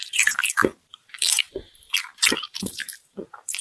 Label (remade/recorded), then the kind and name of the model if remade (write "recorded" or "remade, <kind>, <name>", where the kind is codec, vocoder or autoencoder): remade, vocoder, BigVGAN v2